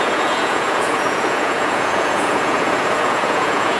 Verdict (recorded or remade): remade